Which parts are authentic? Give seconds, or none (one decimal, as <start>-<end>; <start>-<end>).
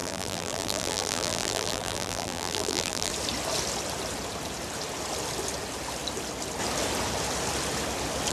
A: 3.1-8.3